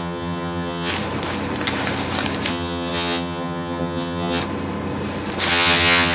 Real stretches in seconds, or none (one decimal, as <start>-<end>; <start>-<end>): 0.9-2.5; 4.4-5.5